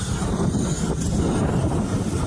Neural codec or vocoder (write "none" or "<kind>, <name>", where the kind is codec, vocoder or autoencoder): none